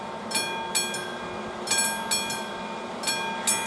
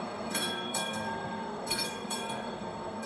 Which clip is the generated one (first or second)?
second